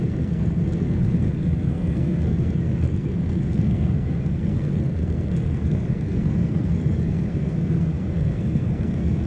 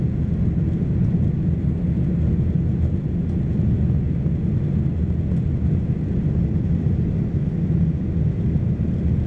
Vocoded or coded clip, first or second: first